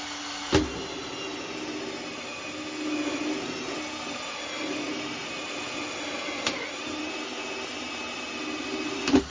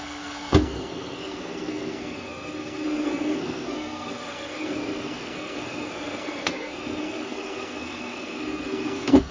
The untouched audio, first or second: first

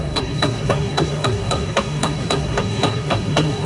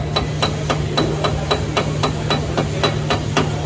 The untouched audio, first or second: second